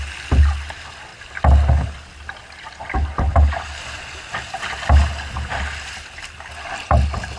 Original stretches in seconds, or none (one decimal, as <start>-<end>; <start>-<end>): 0.0-7.4

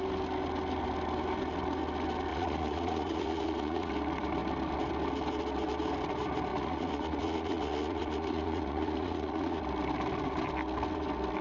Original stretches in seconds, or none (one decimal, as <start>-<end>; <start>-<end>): 0.0-2.3; 3.9-6.5; 9.6-11.4